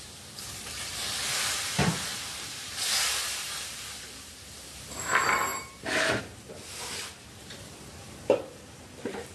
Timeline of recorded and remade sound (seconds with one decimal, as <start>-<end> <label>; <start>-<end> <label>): 0.0-9.3 remade

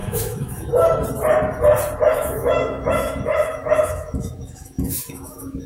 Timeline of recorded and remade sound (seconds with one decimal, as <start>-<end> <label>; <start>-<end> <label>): 0.0-0.7 remade; 0.7-2.1 recorded; 2.1-5.7 remade

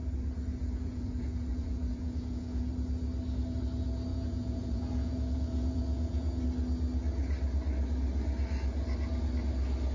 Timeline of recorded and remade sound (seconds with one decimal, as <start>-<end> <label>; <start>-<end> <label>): 0.0-0.6 recorded; 0.6-2.7 remade; 2.7-4.1 recorded; 4.1-6.4 remade; 6.4-9.9 recorded

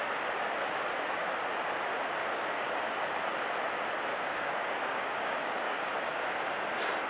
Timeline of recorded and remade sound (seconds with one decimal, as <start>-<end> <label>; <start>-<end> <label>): 0.0-2.2 recorded; 2.2-2.7 remade; 2.7-4.1 recorded; 4.1-5.8 remade; 5.8-7.1 recorded

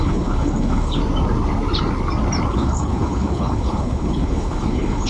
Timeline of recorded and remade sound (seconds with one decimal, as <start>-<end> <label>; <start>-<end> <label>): 0.0-1.0 remade; 1.0-2.5 recorded; 2.5-5.1 remade